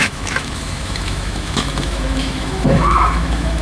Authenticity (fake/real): fake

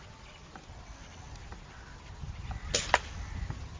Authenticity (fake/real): real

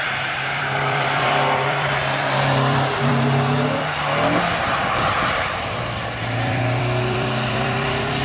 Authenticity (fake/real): fake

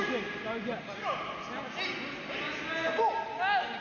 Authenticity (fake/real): real